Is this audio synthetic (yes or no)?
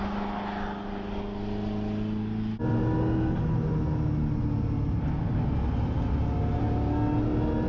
no